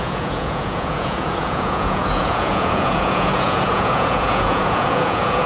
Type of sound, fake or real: fake